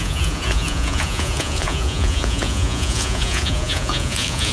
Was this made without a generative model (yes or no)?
no